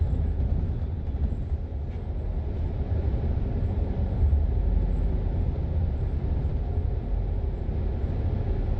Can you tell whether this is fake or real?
real